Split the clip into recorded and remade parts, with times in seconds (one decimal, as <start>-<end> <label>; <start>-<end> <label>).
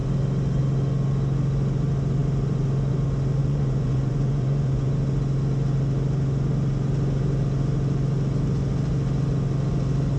0.0-3.4 recorded; 3.4-4.9 remade; 4.9-10.2 recorded